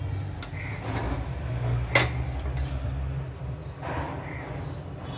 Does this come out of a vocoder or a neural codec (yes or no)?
no